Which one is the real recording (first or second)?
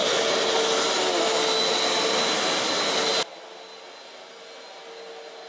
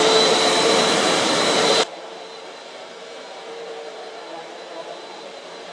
first